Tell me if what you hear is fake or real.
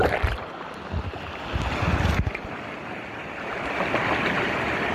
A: real